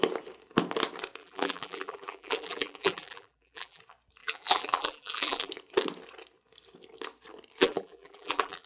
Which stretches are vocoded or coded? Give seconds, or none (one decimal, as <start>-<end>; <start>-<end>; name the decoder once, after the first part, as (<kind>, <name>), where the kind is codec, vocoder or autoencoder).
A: 1.2-3.8 (vocoder, BigVGAN v2); 4.2-5.5; 7.6-8.7